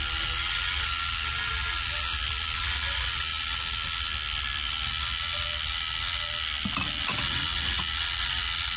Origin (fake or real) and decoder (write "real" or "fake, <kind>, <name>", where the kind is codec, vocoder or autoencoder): real